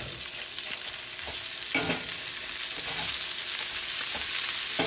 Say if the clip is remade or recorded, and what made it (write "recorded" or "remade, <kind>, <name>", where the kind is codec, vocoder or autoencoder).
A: recorded